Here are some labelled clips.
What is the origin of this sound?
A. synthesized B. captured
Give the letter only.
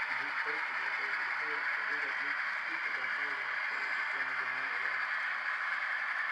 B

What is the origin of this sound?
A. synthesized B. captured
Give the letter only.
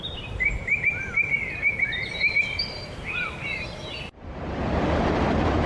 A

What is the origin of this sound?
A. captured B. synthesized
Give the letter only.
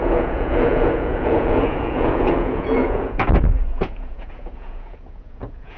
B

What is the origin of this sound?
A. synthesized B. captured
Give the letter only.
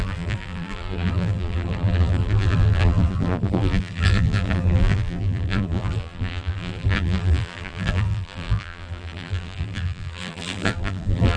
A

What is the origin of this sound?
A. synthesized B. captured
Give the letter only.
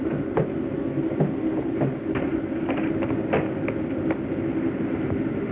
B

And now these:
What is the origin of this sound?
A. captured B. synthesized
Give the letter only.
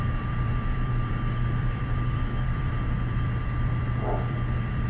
B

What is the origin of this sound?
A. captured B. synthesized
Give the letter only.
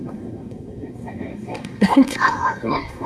B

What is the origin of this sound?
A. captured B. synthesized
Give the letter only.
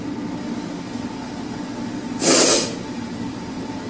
A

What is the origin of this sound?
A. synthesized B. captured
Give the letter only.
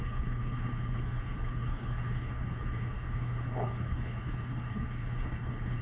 A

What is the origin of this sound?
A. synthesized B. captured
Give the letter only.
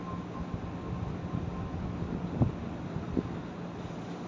B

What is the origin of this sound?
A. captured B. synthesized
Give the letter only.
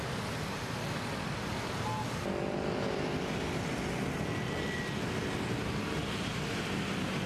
A